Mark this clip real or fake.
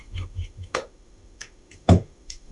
fake